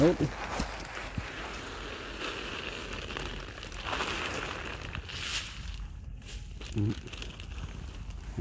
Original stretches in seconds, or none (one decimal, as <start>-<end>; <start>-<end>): 0.0-1.0; 1.7-5.3; 6.3-8.4